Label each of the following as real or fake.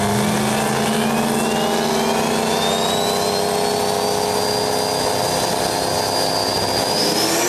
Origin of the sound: real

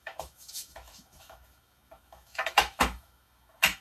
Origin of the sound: fake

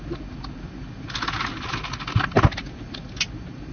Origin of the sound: real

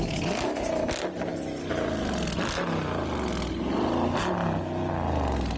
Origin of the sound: real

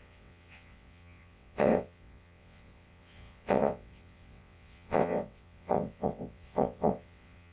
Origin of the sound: fake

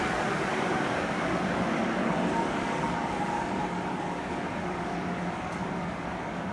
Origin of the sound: fake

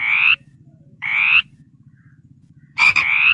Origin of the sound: fake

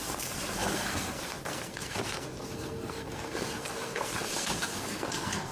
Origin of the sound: fake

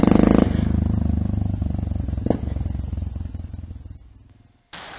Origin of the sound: real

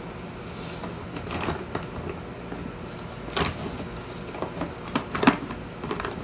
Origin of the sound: real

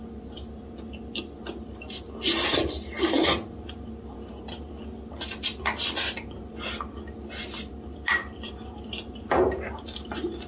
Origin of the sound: real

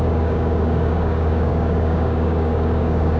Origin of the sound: fake